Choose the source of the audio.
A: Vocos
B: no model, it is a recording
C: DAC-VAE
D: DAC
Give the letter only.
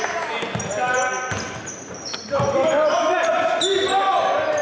B